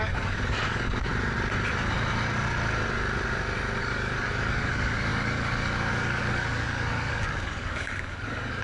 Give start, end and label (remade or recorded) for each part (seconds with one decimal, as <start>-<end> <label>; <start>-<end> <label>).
0.0-1.1 remade; 1.1-3.8 recorded; 3.8-8.6 remade